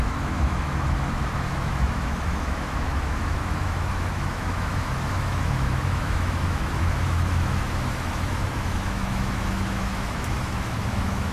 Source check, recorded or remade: remade